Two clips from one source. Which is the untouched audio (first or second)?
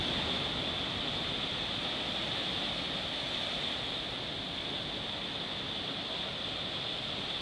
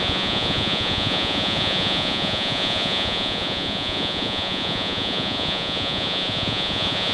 first